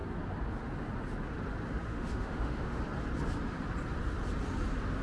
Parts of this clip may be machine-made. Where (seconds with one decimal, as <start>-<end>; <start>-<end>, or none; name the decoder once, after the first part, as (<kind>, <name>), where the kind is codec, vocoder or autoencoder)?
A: 1.9-2.8 (autoencoder, DAC-VAE)